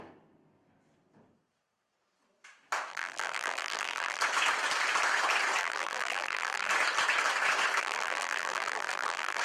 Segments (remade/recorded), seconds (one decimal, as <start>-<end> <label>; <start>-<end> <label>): 0.0-2.9 recorded; 2.9-4.2 remade; 4.2-5.6 recorded; 5.6-6.7 remade; 6.7-7.8 recorded; 7.8-9.4 remade